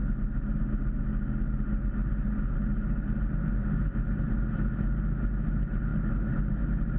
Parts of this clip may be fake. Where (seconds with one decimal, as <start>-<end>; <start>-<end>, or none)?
none